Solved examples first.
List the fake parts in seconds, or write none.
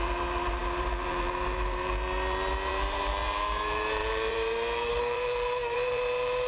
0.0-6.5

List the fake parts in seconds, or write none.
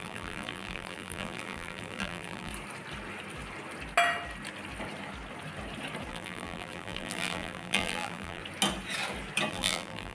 0.0-2.5; 6.1-8.4; 9.5-10.1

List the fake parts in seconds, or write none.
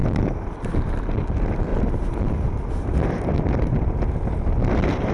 0.7-1.7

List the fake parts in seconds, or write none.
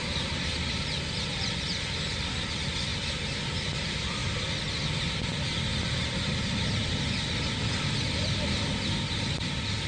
0.0-2.9; 3.4-4.2; 5.2-9.9